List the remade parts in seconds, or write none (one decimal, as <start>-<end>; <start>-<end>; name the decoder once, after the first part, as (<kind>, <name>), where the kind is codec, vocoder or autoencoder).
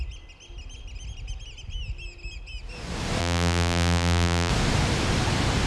3.2-4.5 (vocoder, BigVGAN v2)